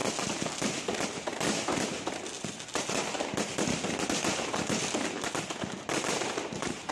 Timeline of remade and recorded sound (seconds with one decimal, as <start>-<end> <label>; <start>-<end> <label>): 0.0-6.9 recorded